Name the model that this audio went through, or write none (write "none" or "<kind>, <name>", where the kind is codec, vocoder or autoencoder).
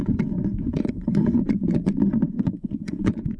vocoder, Vocos